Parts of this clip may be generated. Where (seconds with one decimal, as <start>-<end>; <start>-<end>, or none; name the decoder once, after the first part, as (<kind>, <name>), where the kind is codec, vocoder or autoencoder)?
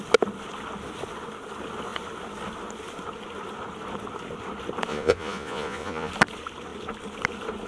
4.9-6.1 (vocoder, Vocos)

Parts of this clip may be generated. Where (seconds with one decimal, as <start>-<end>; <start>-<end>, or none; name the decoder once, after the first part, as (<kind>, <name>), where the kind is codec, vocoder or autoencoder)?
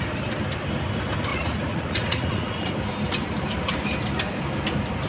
1.3-2.7 (vocoder, Vocos)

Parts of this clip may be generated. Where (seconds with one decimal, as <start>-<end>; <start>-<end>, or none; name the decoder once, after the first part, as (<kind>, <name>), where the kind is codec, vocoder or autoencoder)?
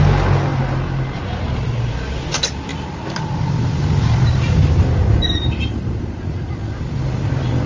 2.7-7.3 (vocoder, BigVGAN v2)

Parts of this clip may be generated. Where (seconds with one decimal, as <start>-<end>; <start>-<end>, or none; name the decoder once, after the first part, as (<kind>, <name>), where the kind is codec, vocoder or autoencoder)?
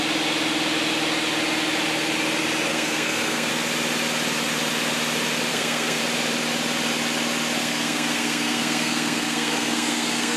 2.7-3.5 (codec, SNAC); 5.5-6.0; 7.6-10.4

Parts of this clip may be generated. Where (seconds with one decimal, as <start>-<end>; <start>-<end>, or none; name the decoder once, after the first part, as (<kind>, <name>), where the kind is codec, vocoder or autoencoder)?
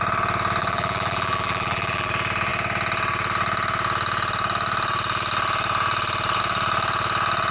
0.6-2.1 (vocoder, BigVGAN v2)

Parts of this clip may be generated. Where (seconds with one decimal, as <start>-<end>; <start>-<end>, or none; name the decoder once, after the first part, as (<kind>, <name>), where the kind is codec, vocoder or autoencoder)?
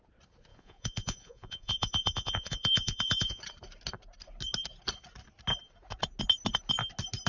0.5-3.4 (vocoder, Vocos)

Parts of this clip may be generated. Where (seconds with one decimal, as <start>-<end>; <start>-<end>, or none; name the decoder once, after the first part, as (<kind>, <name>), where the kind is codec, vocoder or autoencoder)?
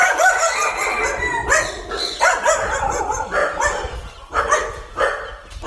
3.4-4.4 (vocoder, BigVGAN v2)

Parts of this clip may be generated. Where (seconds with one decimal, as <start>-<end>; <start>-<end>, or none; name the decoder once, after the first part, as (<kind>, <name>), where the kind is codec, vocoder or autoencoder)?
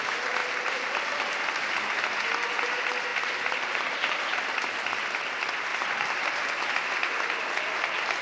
3.1-4.4 (vocoder, BigVGAN v2); 5.7-6.5